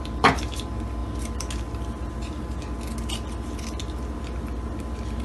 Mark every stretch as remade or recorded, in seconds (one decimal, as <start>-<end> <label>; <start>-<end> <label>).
0.0-5.2 recorded